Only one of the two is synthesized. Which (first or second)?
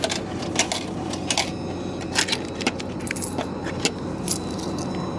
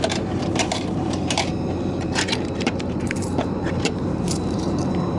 second